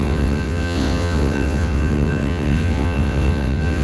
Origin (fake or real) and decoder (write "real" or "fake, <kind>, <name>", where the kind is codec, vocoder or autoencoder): fake, vocoder, WaveNeXt